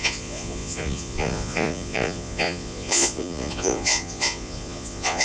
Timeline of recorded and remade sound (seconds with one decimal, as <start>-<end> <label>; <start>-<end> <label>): 0.0-5.2 remade